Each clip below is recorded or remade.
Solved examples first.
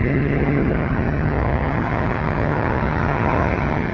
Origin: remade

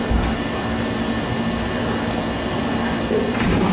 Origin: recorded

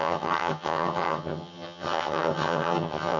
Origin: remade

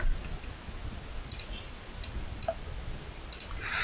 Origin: recorded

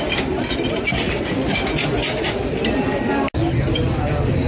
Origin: recorded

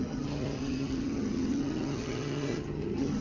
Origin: remade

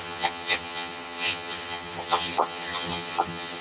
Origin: remade